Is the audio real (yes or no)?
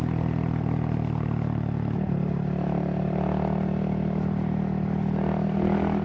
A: yes